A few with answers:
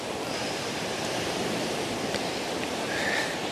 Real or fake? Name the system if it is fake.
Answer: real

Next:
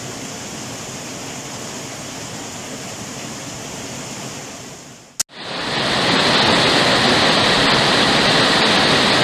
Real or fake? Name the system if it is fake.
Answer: real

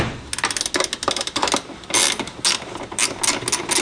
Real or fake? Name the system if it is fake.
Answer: real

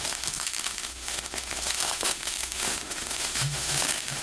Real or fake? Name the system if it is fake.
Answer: fake, autoencoder, DAC-VAE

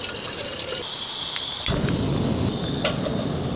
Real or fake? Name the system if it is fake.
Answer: real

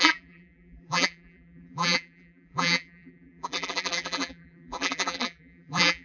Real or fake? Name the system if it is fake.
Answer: fake, vocoder, BigVGAN v2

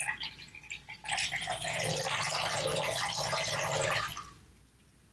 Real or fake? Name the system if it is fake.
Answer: real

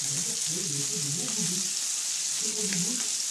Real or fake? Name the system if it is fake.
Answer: real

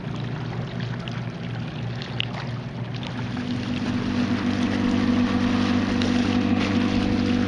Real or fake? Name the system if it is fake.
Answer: real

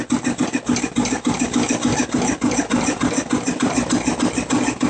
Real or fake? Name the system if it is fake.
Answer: real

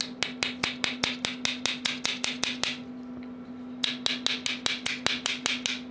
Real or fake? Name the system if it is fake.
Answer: real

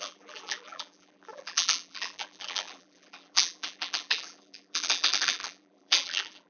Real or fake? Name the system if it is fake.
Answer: fake, vocoder, BigVGAN v2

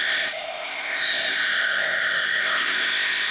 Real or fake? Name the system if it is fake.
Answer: fake, codec, ZipCodec